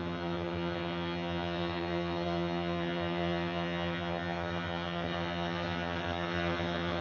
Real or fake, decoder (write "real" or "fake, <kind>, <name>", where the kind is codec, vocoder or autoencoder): fake, vocoder, HiFi-GAN